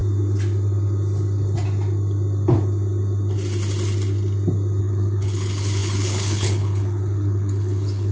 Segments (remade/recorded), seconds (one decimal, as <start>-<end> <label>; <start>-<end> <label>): 0.0-4.8 recorded; 4.8-8.1 remade